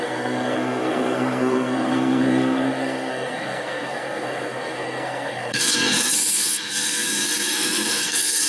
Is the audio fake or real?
fake